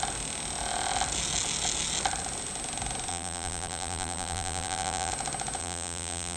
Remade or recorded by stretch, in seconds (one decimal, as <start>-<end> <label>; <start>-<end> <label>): 0.0-3.1 recorded; 3.1-5.1 remade; 5.1-5.6 recorded; 5.6-6.4 remade